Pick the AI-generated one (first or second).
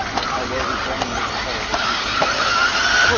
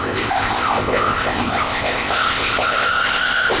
second